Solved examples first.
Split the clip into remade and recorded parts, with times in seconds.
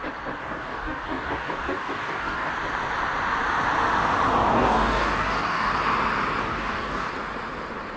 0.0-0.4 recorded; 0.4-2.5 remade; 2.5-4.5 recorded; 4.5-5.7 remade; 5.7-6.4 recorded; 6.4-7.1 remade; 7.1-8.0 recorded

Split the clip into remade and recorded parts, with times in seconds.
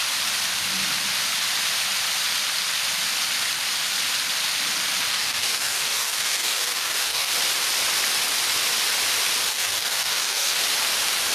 0.0-5.1 recorded; 5.1-7.3 remade; 7.3-9.5 recorded; 9.5-10.6 remade; 10.6-11.3 recorded